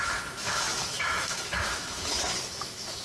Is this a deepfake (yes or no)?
yes